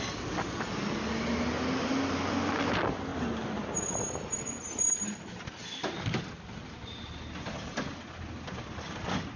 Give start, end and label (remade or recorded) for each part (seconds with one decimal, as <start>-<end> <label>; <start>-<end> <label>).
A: 0.0-9.4 recorded